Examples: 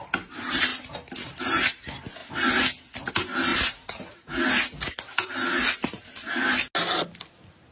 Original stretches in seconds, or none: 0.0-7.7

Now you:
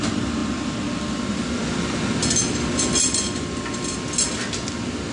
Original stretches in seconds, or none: 0.0-5.1

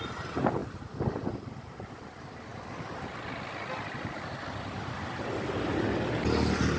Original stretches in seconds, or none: 0.0-6.8

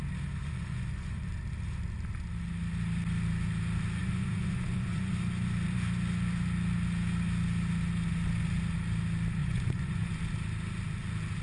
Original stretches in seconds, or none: 0.0-0.4; 1.3-4.0; 5.1-9.4; 10.1-11.4